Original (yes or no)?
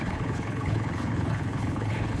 no